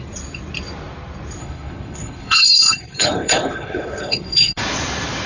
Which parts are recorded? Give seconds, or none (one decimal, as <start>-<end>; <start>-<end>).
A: 0.0-1.4; 4.6-5.3